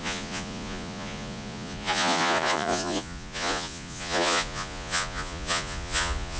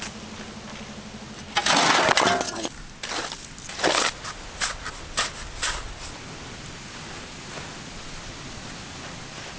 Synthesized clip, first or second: first